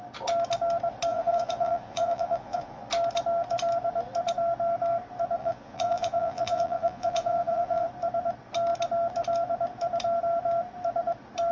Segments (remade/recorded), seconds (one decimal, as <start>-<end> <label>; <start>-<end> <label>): 0.0-1.1 recorded; 1.1-2.8 remade; 2.8-5.4 recorded; 5.4-7.9 remade; 7.9-11.5 recorded